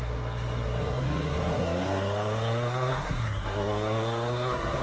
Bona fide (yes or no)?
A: no